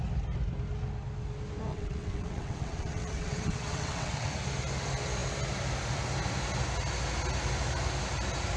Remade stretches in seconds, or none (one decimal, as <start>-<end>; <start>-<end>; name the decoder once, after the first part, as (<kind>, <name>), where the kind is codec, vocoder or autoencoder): 1.7-4.3 (vocoder, WaveNeXt)